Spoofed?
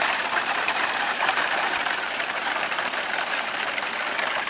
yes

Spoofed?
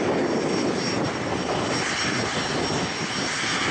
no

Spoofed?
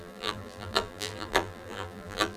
yes